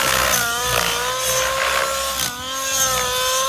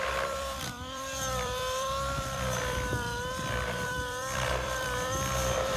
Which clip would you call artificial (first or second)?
second